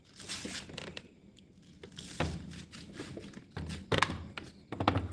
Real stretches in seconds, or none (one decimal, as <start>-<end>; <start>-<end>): 0.0-5.1